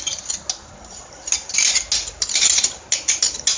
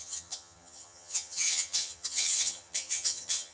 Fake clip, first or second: second